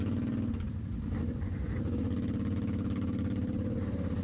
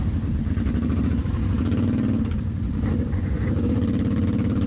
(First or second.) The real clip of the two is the first